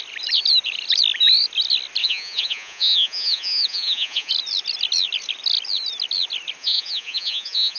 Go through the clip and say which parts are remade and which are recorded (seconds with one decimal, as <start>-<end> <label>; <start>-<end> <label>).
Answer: 0.0-2.0 recorded; 2.0-4.3 remade; 4.3-6.6 recorded; 6.6-7.8 remade